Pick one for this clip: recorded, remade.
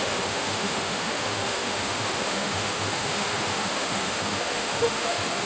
remade